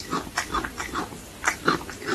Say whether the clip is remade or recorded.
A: recorded